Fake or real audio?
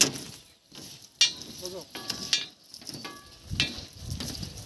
real